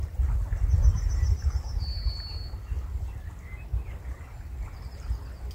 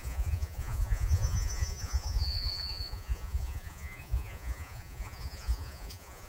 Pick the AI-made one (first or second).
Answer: second